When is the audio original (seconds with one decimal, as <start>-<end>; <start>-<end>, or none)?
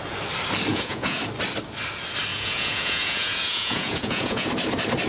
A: 0.0-0.7; 1.2-2.3; 4.5-5.1